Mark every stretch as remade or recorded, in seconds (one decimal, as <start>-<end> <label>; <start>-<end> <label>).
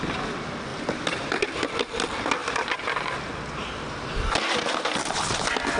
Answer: 0.0-5.8 recorded